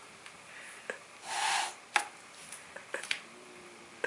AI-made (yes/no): no